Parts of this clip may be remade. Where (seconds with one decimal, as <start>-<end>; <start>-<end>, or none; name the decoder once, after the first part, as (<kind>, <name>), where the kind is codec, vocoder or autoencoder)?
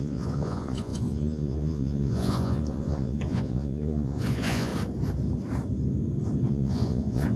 0.0-4.7 (vocoder, Vocos); 6.5-7.4